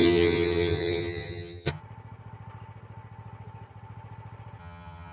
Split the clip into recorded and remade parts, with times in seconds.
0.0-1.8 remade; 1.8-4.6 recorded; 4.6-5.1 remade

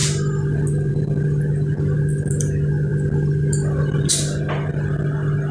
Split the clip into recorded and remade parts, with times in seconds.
0.0-5.5 recorded

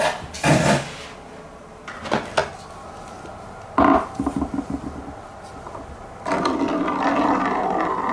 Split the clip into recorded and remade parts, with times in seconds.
0.0-8.1 recorded

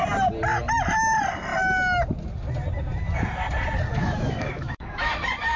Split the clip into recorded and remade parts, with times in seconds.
0.0-3.9 recorded; 3.9-5.1 remade; 5.1-5.6 recorded

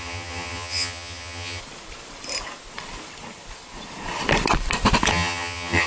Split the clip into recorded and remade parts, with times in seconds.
0.0-1.6 remade; 1.6-5.1 recorded; 5.1-5.9 remade

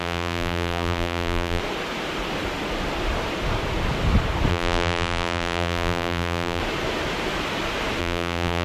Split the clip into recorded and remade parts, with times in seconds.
0.0-1.6 remade; 1.6-4.5 recorded; 4.5-6.6 remade; 6.6-8.0 recorded; 8.0-8.6 remade

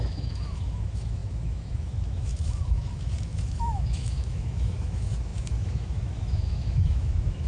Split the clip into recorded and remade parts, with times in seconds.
0.0-7.5 remade

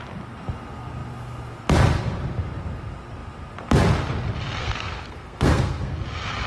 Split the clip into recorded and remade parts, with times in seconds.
0.0-4.6 recorded; 4.6-5.9 remade; 5.9-6.5 recorded